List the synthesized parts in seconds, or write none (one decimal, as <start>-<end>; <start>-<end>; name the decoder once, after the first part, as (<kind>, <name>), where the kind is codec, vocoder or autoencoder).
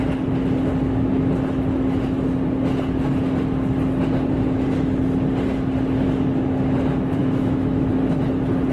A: 7.2-7.9 (autoencoder, DAC-VAE)